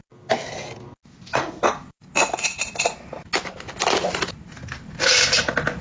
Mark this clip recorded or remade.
recorded